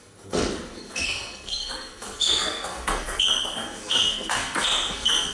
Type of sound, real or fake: fake